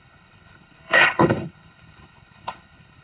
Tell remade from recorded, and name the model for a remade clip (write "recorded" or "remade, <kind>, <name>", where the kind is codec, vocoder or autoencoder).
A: remade, codec, HILCodec